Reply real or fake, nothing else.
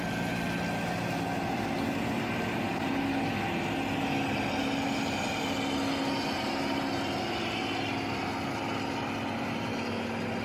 real